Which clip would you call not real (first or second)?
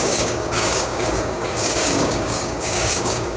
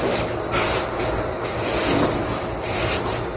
first